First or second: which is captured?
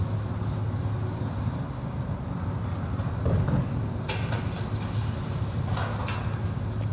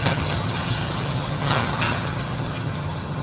first